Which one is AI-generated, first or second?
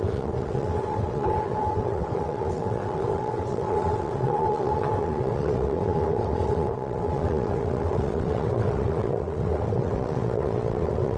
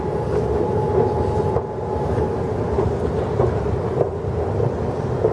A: first